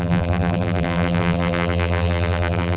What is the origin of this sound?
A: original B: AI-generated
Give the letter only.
B